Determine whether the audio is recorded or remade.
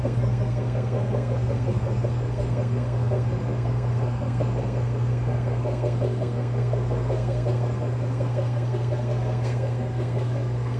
remade